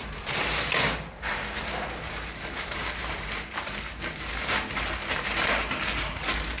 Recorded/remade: remade